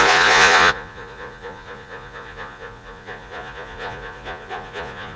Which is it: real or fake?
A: fake